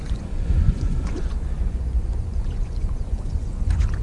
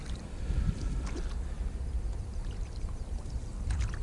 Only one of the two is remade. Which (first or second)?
first